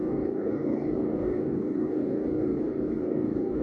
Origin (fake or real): fake